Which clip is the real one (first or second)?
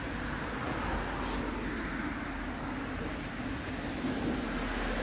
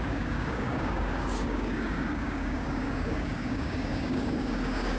first